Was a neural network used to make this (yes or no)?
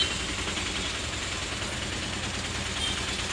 no